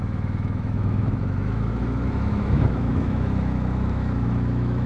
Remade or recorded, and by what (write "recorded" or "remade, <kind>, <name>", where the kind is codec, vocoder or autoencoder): remade, autoencoder, DAC-VAE